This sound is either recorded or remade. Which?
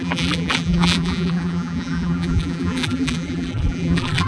remade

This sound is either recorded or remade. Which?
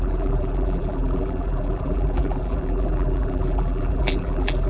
remade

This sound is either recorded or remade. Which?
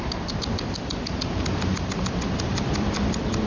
remade